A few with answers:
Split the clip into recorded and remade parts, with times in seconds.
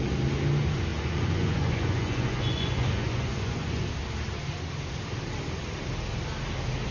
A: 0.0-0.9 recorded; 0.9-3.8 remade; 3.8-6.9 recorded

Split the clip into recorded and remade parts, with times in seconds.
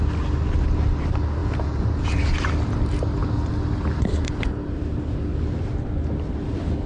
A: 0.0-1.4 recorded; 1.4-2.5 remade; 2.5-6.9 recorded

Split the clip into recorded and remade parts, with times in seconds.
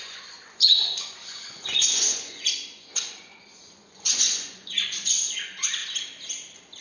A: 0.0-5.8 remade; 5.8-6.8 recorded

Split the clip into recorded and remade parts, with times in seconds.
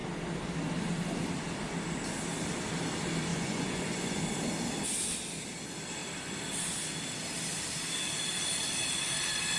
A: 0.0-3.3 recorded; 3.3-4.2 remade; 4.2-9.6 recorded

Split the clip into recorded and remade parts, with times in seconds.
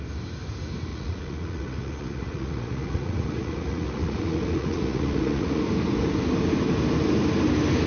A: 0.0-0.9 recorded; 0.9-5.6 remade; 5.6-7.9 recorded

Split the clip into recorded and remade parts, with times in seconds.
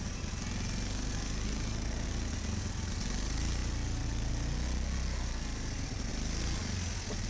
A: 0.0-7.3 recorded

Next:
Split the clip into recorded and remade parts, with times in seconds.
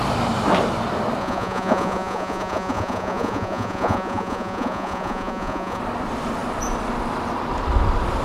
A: 0.0-1.2 recorded; 1.2-5.8 remade; 5.8-8.2 recorded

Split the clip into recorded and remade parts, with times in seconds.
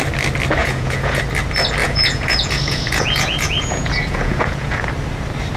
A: 0.0-0.6 recorded; 0.6-1.2 remade; 1.2-1.8 recorded; 1.8-4.9 remade; 4.9-5.6 recorded